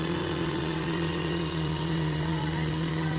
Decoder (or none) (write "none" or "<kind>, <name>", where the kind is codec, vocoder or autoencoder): vocoder, WaveNeXt